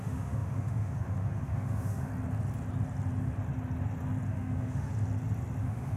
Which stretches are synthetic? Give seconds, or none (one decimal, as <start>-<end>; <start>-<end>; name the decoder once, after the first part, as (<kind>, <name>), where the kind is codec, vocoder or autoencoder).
0.0-2.1 (autoencoder, DAC-VAE); 4.3-4.9; 5.6-6.0